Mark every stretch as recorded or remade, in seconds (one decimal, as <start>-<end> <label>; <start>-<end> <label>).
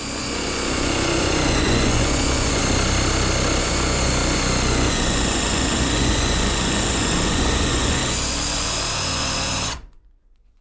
0.0-2.6 remade; 2.6-3.6 recorded; 3.6-10.6 remade